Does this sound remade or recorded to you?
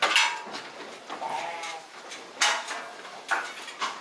recorded